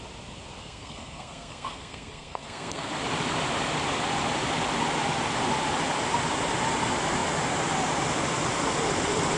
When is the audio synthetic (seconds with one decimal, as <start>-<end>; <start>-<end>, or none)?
0.6-2.9